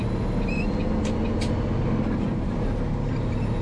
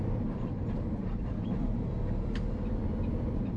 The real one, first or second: first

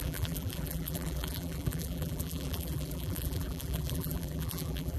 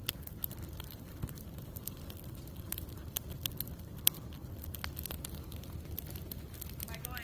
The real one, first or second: second